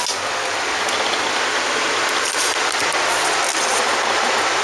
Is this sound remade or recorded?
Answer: recorded